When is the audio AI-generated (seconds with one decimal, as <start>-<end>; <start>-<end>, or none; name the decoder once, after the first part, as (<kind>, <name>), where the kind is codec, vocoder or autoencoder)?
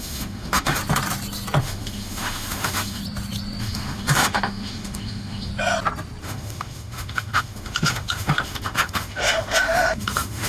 0.0-0.8 (autoencoder, DAC-VAE); 1.6-3.0; 3.6-5.5; 6.2-10.5